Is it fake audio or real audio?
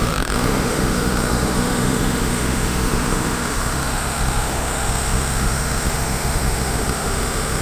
fake